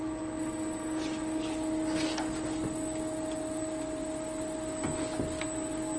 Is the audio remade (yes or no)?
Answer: no